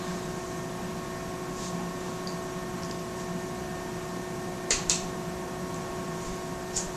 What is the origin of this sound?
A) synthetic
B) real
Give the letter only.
A